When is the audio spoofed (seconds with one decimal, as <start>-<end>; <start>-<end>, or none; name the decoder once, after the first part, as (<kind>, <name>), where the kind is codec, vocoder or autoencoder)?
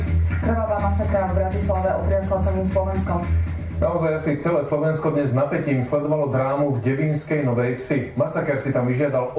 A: none